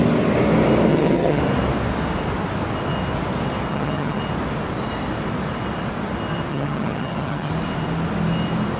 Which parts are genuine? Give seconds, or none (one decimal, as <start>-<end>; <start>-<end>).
0.0-0.9; 1.4-3.7; 4.2-6.5; 7.5-8.8